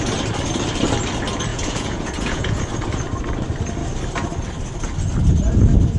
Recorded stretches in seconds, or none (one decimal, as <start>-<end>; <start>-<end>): 0.0-1.5; 2.6-6.0